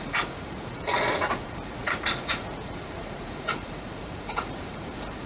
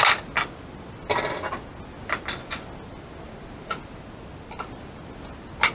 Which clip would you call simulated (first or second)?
first